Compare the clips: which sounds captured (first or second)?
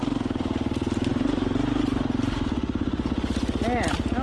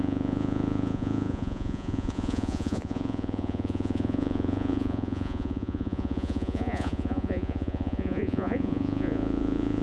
first